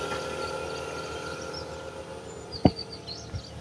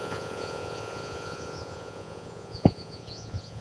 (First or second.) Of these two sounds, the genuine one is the first